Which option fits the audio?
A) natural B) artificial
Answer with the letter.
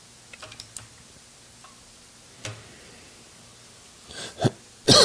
A